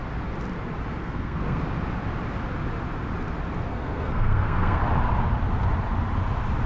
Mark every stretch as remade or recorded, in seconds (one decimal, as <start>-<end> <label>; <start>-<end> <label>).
0.0-1.0 recorded; 1.0-1.6 remade; 1.6-3.7 recorded; 3.7-4.8 remade; 4.8-6.7 recorded